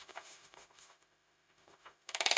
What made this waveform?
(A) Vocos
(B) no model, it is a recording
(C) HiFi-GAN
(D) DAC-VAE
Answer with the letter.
D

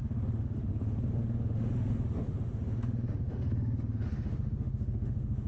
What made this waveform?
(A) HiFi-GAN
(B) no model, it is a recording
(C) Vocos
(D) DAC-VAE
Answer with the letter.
D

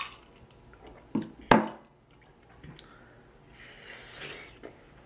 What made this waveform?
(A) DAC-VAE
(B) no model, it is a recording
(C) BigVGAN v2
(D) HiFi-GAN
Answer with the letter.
B